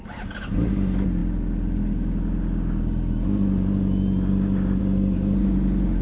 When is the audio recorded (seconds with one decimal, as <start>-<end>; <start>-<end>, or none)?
0.0-6.0